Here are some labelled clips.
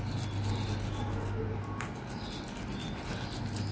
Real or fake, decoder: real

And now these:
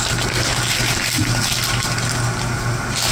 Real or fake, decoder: real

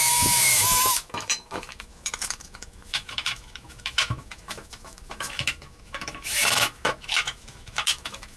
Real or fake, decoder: fake, autoencoder, DAC-VAE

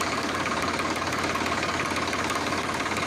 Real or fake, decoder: fake, codec, DAC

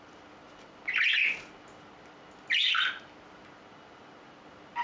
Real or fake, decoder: real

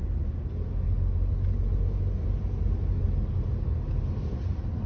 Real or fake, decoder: real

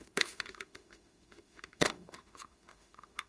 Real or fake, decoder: fake, autoencoder, DAC-VAE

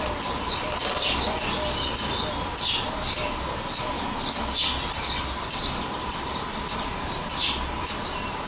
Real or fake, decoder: real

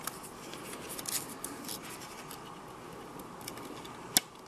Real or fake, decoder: real